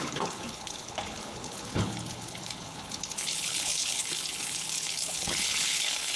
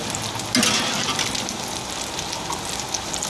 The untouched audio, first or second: second